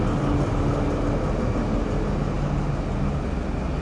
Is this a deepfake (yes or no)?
no